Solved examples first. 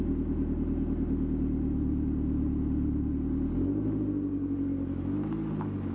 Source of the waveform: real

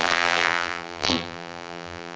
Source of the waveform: fake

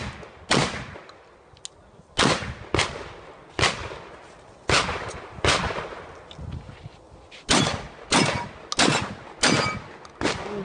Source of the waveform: real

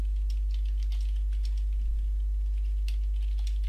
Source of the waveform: real